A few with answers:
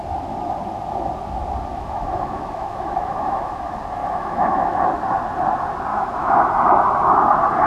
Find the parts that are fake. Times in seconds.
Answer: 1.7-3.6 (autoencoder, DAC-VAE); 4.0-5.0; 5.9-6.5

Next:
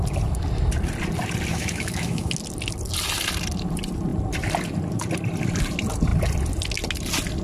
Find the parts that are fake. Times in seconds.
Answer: 1.5-2.3 (autoencoder, DAC-VAE)